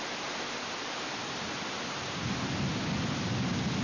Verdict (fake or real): real